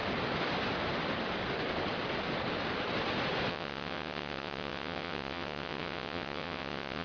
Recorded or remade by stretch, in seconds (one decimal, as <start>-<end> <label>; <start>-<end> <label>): 0.0-3.5 recorded; 3.5-7.0 remade